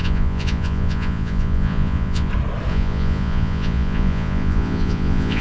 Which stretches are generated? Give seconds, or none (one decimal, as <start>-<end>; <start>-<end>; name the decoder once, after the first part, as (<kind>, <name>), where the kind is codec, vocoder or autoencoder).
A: 0.0-2.3 (vocoder, Vocos); 2.7-5.4